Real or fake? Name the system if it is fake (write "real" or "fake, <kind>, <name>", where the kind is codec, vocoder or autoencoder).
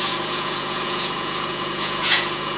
fake, vocoder, Vocos